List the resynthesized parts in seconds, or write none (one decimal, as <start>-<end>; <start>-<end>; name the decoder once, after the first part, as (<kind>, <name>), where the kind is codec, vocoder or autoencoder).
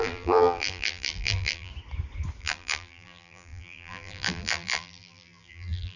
0.0-1.7 (vocoder, BigVGAN v2); 2.4-6.0